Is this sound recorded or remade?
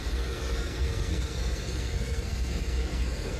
remade